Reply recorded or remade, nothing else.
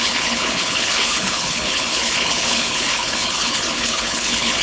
remade